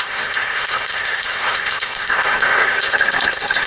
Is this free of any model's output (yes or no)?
no